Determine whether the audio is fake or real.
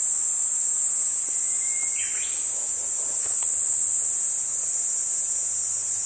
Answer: real